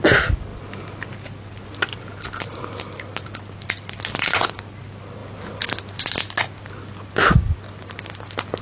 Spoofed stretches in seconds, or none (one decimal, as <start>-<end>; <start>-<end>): none